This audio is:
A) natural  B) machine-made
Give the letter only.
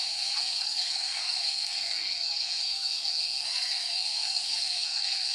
B